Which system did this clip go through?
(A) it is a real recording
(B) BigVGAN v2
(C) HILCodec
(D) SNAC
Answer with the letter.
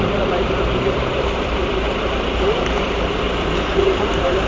B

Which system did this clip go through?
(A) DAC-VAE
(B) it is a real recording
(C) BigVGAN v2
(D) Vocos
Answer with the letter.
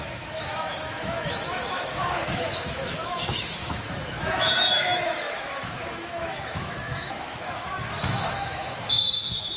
A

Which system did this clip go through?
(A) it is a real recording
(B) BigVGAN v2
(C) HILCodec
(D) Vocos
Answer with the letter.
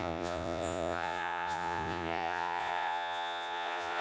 D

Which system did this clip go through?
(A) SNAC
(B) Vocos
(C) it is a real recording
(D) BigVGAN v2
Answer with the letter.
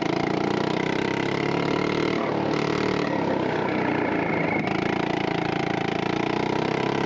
C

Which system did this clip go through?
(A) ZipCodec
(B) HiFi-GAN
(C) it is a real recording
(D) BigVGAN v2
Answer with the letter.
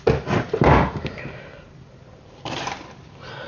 C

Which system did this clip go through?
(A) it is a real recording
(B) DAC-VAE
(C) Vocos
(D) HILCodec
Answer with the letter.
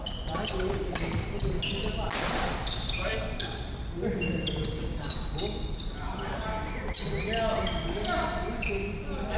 A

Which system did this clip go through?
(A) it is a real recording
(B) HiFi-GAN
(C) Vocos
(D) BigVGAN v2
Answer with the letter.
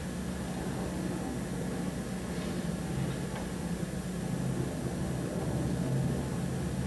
A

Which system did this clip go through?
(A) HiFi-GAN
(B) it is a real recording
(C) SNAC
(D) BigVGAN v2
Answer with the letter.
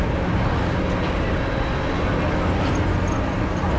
B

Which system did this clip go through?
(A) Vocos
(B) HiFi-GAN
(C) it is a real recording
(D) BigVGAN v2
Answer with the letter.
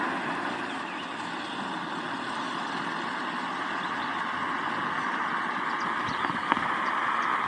C